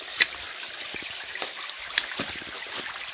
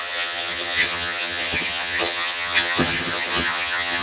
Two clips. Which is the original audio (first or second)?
first